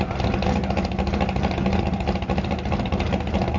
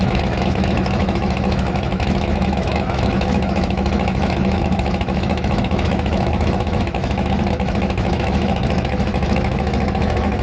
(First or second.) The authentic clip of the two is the first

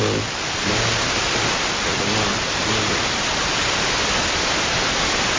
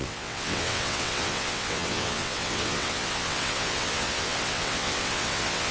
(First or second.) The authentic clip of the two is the first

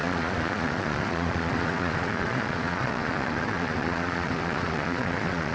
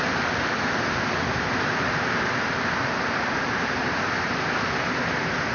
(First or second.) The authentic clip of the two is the second